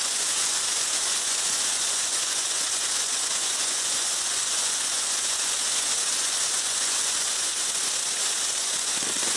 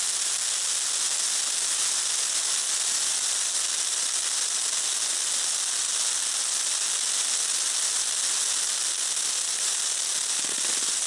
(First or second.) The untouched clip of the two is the second